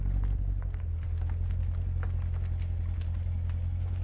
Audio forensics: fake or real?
real